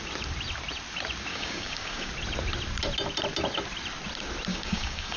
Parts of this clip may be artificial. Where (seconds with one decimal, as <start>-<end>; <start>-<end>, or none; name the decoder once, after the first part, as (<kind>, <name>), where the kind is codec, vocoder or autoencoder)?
1.3-2.1 (codec, DAC); 4.5-5.2